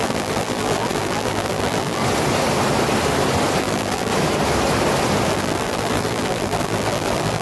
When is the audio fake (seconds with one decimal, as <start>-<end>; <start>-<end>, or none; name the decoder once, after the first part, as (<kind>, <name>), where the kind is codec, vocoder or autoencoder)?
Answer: 0.0-2.0 (vocoder, BigVGAN v2); 3.6-4.1; 5.3-7.4